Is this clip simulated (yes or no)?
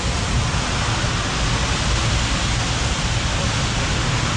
no